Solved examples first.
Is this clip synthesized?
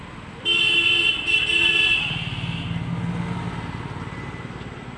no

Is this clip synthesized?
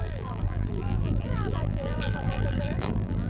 yes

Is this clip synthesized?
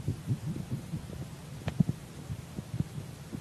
no